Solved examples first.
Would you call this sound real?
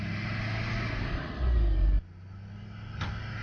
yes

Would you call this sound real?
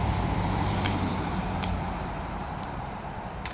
no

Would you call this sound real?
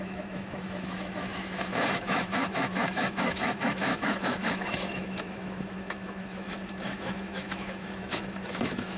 no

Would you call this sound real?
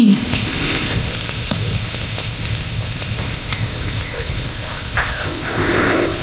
no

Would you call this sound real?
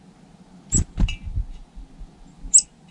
yes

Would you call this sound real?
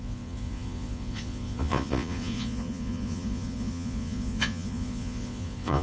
no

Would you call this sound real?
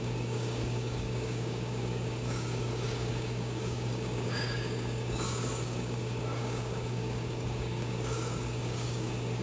no